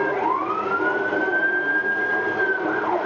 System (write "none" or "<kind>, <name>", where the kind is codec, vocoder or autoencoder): none